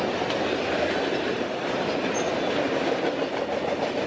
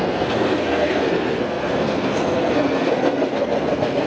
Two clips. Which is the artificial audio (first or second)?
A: second